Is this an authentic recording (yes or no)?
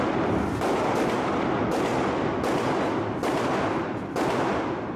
yes